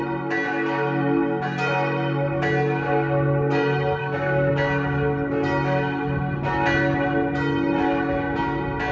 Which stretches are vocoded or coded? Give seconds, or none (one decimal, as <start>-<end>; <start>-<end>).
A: 4.0-4.5

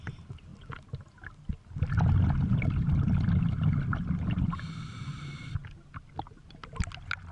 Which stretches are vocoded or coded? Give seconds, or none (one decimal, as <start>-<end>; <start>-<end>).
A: none

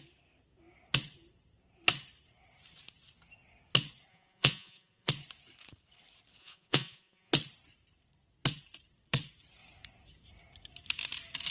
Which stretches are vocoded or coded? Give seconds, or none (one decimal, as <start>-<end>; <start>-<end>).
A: 4.1-5.1; 6.4-7.3

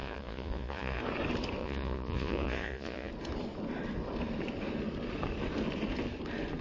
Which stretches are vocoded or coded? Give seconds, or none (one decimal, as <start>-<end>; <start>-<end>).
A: 0.0-1.0; 1.6-3.1

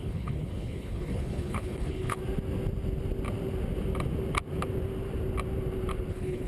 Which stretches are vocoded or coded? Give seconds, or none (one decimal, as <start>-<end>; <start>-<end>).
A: 0.0-2.2; 6.1-6.5